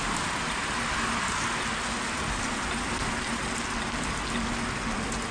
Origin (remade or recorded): recorded